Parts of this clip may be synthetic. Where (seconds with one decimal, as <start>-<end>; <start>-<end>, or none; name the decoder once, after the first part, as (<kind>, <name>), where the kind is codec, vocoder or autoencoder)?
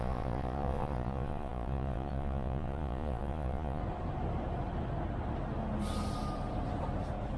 0.0-3.8 (vocoder, Vocos)